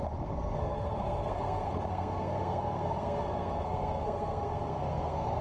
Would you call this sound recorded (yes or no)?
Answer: no